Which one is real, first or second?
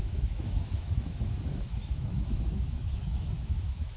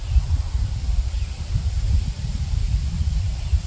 second